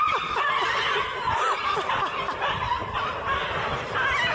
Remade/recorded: recorded